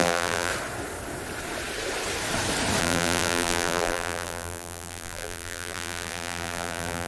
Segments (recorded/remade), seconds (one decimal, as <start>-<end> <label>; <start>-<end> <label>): 0.0-0.5 remade; 0.5-2.8 recorded; 2.8-7.1 remade